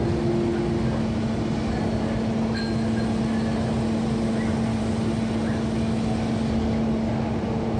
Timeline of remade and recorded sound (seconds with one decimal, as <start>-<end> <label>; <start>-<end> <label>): 0.0-7.8 recorded